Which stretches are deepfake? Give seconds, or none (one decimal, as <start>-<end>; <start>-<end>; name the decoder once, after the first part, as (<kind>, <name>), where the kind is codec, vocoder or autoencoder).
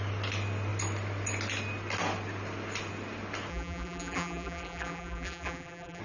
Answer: 3.5-6.0 (vocoder, BigVGAN v2)